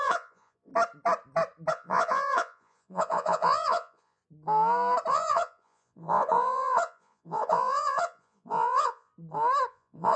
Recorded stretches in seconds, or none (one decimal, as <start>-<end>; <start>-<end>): 0.7-1.7; 4.2-5.1; 9.1-9.7